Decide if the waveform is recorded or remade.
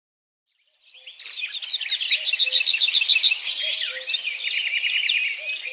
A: recorded